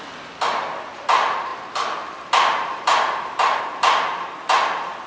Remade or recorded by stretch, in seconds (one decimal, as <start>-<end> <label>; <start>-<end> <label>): 0.0-5.1 remade

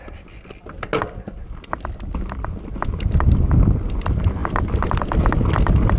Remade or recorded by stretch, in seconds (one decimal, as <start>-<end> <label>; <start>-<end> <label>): 0.0-6.0 recorded

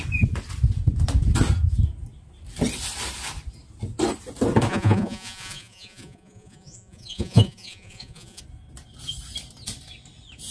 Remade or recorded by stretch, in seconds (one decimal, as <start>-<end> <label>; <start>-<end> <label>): 0.0-4.7 recorded; 4.7-8.4 remade; 8.4-10.5 recorded

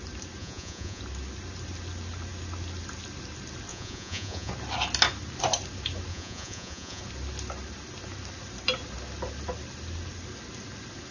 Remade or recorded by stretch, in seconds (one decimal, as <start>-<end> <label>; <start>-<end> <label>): 0.0-0.4 recorded; 0.4-1.0 remade; 1.0-3.7 recorded; 3.7-4.5 remade; 4.5-6.1 recorded; 6.1-7.0 remade; 7.0-11.1 recorded

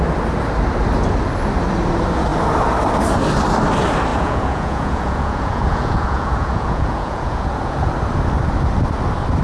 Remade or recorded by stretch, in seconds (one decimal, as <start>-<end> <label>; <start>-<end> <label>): 0.0-4.1 recorded; 4.1-7.9 remade; 7.9-9.4 recorded

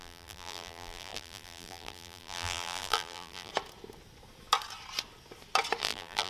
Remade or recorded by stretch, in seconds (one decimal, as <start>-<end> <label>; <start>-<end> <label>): 0.0-3.5 remade; 3.5-5.8 recorded; 5.8-6.3 remade

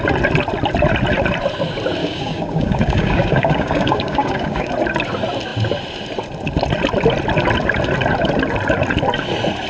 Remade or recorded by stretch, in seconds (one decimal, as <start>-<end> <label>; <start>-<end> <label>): 0.0-2.0 recorded; 2.0-4.7 remade; 4.7-9.7 recorded

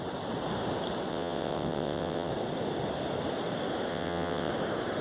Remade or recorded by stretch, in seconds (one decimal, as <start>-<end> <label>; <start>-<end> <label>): 0.0-1.1 recorded; 1.1-2.3 remade; 2.3-3.9 recorded; 3.9-4.5 remade; 4.5-5.0 recorded